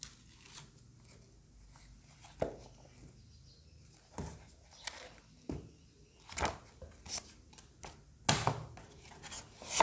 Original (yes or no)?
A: yes